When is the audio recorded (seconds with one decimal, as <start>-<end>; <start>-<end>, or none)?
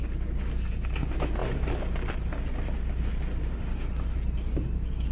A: 0.0-5.1